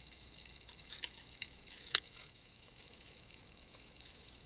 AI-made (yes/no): yes